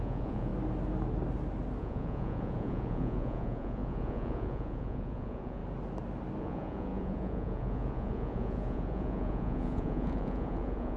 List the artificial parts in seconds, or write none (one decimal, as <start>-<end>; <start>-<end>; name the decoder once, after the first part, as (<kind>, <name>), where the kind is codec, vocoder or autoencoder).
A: 0.0-0.5 (vocoder, Vocos); 1.8-5.6; 6.4-11.0